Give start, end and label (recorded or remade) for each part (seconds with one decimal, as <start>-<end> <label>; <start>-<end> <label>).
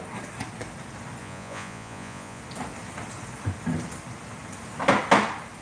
0.0-1.2 recorded; 1.2-2.4 remade; 2.4-5.6 recorded